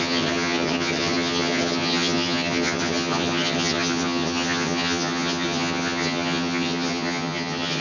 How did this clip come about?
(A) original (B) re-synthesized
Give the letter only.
B